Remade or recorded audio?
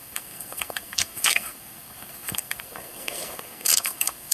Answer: remade